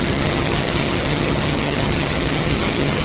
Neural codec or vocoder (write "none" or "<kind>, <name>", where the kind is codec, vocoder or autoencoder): vocoder, HiFi-GAN